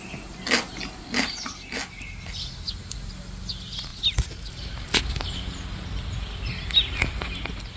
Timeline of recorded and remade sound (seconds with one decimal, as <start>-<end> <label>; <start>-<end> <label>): 0.0-7.8 recorded